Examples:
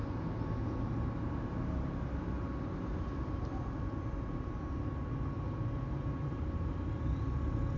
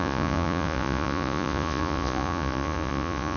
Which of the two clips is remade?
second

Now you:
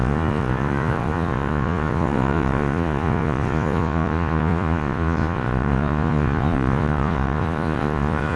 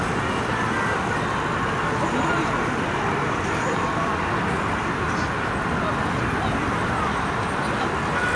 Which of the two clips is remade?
first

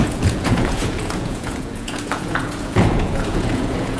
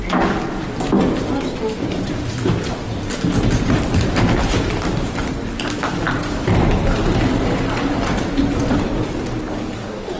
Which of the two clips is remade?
first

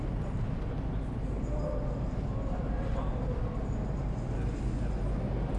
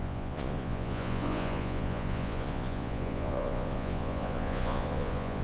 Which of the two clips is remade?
second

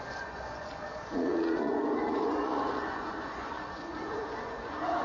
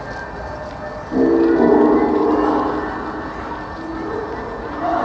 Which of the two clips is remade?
first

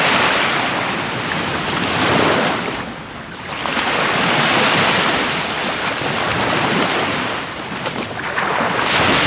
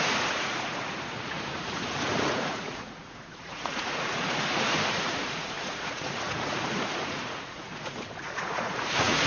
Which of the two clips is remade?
second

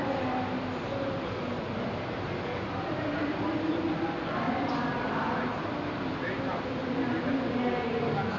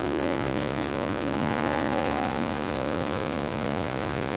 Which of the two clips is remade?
second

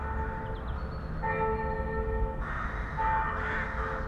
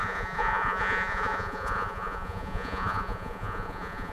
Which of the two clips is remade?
second